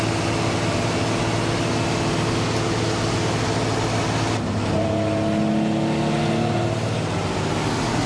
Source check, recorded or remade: recorded